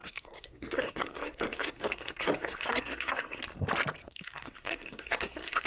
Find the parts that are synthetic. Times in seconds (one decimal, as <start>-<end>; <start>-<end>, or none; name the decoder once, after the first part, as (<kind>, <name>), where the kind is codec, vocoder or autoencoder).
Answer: 0.0-3.4 (codec, SNAC); 4.0-5.7